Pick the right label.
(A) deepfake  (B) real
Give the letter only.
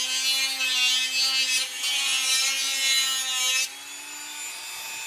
B